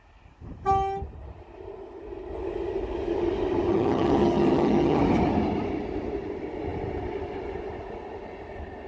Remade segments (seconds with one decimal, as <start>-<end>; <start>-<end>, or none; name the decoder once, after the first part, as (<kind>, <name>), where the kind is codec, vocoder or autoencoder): 3.7-5.0 (vocoder, HiFi-GAN)

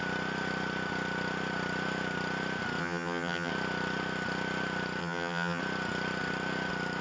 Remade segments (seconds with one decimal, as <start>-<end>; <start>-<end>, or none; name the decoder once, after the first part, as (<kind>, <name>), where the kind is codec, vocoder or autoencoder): 2.8-3.5 (vocoder, HiFi-GAN); 5.0-5.6

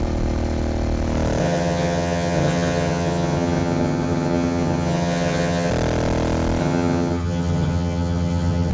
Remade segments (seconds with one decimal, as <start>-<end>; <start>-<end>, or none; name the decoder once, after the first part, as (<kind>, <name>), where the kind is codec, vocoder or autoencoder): 1.4-5.7 (vocoder, HiFi-GAN); 6.6-8.7